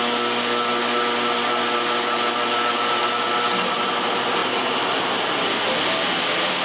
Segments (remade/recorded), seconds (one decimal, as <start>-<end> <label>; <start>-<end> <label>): 0.0-6.6 recorded